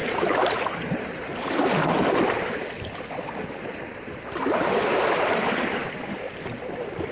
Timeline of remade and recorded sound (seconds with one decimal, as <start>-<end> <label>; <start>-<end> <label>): 0.0-7.1 remade